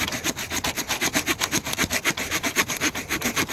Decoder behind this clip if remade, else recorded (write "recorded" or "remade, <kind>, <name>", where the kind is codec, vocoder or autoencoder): recorded